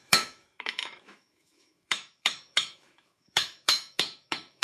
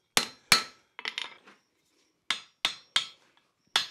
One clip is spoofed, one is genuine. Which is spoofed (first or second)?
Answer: first